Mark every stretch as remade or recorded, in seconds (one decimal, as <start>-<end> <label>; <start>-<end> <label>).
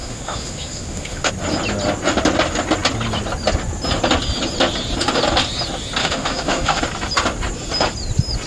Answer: 0.0-1.3 remade; 1.3-6.0 recorded; 6.0-6.8 remade; 6.8-8.5 recorded